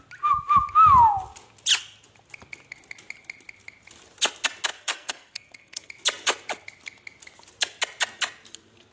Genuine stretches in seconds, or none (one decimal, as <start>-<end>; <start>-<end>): 0.0-4.7; 5.9-8.9